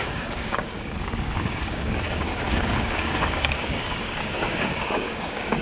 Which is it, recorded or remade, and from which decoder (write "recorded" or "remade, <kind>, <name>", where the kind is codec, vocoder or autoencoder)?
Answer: remade, codec, DAC